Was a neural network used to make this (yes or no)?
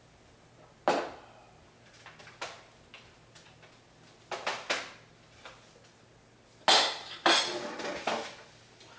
no